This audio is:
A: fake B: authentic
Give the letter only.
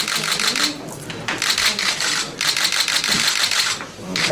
B